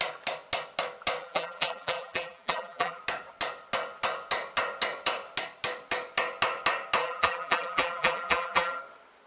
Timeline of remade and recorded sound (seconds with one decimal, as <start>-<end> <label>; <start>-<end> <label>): 0.0-1.2 recorded; 1.2-3.0 remade; 3.0-7.0 recorded; 7.0-8.8 remade; 8.8-9.3 recorded